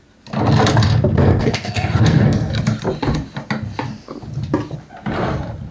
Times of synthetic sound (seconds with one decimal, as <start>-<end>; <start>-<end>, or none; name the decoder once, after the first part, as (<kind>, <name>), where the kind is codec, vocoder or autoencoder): 1.2-2.5 (codec, SNAC)